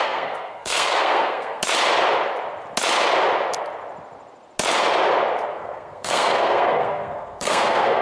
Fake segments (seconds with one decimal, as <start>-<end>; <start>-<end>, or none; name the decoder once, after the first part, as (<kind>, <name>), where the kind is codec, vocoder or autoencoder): 0.0-1.6 (codec, SNAC); 5.5-8.0